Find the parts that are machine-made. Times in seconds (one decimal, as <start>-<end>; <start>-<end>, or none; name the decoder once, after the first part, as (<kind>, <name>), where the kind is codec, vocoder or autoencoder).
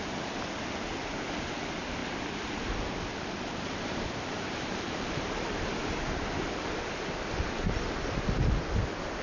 2.0-5.7 (vocoder, BigVGAN v2)